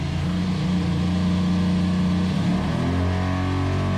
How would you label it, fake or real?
real